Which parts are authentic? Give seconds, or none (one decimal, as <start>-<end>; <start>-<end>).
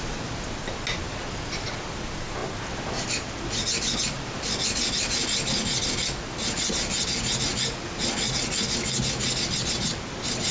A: 0.0-10.5